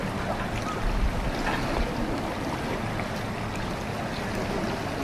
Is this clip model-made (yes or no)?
no